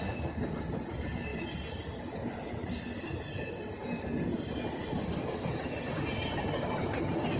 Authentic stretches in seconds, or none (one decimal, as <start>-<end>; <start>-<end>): 0.0-7.4

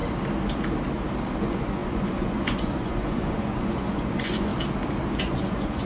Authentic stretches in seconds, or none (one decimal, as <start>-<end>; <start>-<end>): 0.0-1.4; 4.5-5.2

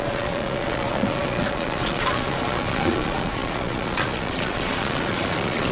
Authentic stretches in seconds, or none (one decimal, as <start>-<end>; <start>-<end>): none

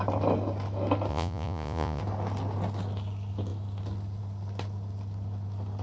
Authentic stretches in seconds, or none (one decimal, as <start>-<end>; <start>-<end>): 0.0-1.1; 2.0-5.8

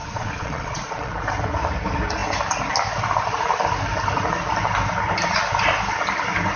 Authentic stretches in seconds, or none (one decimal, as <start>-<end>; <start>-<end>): 1.1-6.6